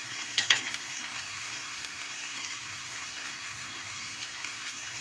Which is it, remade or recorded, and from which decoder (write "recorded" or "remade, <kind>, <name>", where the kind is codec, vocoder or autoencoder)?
remade, codec, SNAC